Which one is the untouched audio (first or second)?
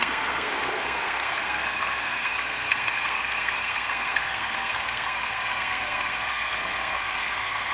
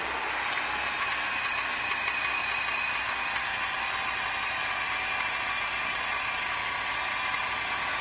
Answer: second